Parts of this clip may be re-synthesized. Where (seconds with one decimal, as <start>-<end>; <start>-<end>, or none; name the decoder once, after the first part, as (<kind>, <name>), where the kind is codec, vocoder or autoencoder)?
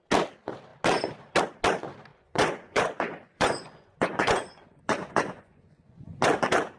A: 2.1-6.2 (vocoder, Vocos)